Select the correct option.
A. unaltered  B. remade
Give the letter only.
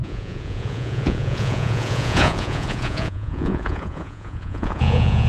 B